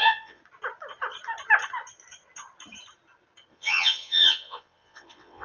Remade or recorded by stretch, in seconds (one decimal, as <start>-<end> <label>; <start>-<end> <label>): 0.0-0.4 remade; 0.4-3.5 recorded; 3.5-5.4 remade